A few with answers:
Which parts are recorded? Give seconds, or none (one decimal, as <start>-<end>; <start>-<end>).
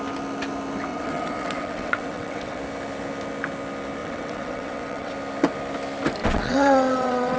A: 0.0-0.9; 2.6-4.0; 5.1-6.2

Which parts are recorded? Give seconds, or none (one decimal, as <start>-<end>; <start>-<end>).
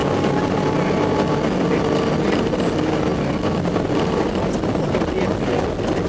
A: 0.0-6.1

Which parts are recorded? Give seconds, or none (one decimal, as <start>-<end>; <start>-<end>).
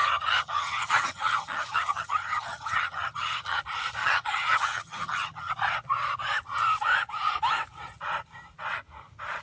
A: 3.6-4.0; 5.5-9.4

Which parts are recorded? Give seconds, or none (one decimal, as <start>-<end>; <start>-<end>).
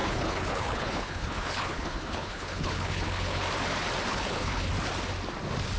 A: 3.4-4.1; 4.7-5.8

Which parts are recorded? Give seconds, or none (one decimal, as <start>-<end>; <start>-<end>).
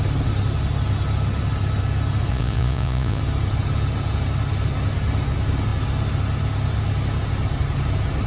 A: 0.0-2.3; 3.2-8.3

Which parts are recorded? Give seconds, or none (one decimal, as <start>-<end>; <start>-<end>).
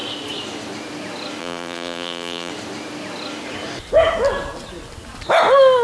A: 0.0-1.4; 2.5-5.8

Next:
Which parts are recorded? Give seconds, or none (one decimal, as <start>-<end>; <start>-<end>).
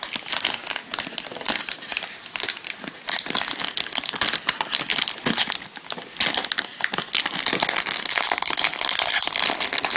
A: 0.0-0.8; 4.0-10.0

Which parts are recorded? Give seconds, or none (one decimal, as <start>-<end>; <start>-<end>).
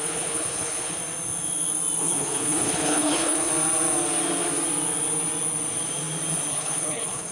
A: 1.0-2.0; 3.5-6.5